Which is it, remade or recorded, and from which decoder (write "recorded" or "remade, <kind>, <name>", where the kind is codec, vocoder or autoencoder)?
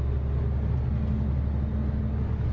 recorded